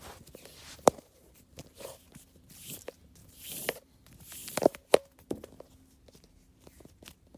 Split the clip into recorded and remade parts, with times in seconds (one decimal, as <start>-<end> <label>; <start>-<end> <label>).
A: 0.0-1.6 recorded; 1.6-2.6 remade; 2.6-3.2 recorded; 3.2-4.0 remade; 4.0-7.4 recorded